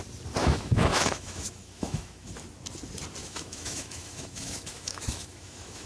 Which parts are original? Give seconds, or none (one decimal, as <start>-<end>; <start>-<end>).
0.0-0.4; 2.3-3.2